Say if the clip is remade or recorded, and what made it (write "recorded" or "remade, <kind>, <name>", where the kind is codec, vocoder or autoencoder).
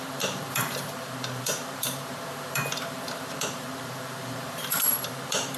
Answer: remade, vocoder, BigVGAN v2